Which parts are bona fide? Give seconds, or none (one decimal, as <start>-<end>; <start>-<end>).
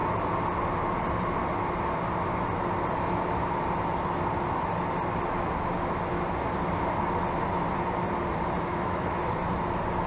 0.0-8.7; 9.2-10.1